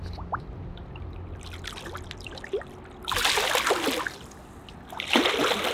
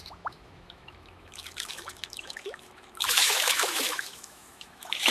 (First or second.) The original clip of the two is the first